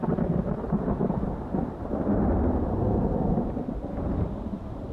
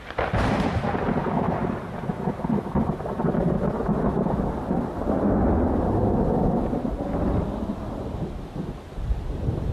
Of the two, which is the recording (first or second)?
second